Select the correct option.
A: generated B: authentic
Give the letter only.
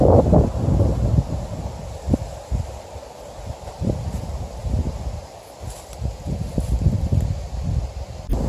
B